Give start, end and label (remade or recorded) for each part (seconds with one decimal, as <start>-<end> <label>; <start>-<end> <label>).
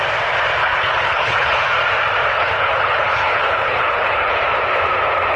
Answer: 0.0-0.6 recorded; 0.6-1.7 remade; 1.7-2.3 recorded; 2.3-4.3 remade; 4.3-5.4 recorded